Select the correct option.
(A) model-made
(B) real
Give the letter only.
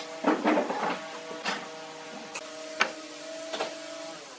B